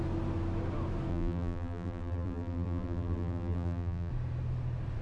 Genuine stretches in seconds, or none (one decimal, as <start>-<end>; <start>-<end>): 0.0-1.1; 4.1-5.0